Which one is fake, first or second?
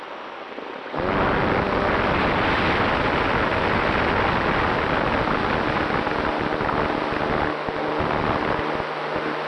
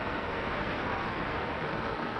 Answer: second